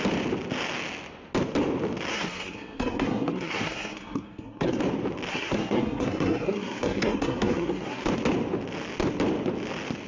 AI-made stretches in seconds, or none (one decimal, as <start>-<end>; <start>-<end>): 2.1-4.8; 5.3-8.0